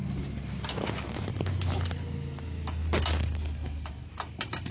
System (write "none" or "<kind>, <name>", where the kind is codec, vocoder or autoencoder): none